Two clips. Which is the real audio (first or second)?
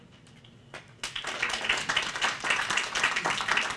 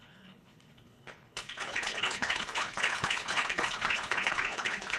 first